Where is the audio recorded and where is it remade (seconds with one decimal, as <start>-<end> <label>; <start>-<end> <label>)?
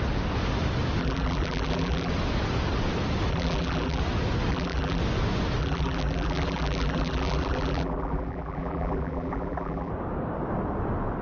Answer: 0.0-1.0 recorded; 1.0-2.1 remade; 2.1-3.3 recorded; 3.3-4.0 remade; 4.0-4.5 recorded; 4.5-5.0 remade; 5.0-5.6 recorded; 5.6-9.9 remade; 9.9-11.2 recorded